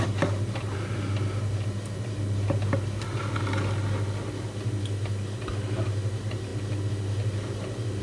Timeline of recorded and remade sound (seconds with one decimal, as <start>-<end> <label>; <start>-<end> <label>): 0.0-8.0 recorded